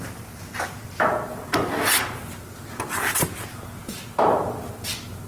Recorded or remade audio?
recorded